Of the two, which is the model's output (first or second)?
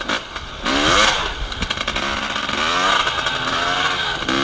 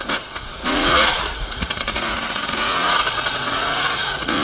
second